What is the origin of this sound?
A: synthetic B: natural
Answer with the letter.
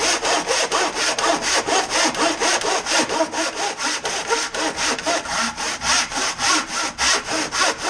B